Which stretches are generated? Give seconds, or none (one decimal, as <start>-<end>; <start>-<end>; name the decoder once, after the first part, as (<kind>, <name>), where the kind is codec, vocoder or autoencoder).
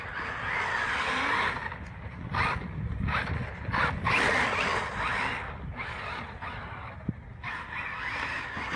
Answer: none